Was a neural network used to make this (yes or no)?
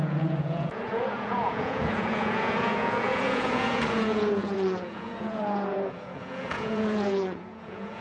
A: yes